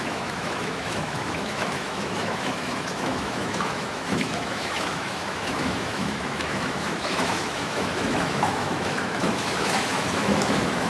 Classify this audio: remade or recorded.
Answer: remade